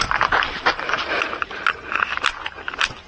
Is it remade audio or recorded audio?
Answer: recorded